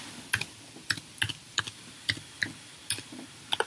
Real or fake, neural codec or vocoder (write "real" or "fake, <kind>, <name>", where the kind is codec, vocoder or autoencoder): real